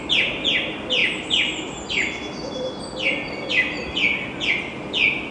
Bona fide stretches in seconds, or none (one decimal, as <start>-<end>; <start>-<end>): 0.0-5.3